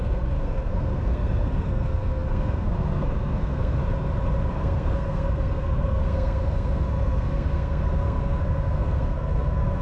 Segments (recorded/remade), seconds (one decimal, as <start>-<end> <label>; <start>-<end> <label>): 0.0-3.8 remade; 3.8-4.5 recorded; 4.5-9.8 remade